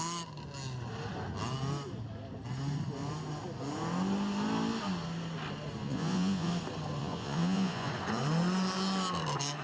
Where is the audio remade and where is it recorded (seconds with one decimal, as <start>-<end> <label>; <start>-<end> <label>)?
0.0-5.8 recorded; 5.8-6.5 remade; 6.5-7.0 recorded; 7.0-7.9 remade; 7.9-9.6 recorded